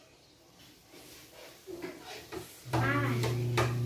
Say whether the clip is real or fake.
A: real